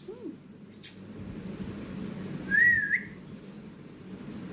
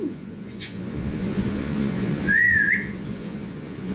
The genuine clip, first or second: first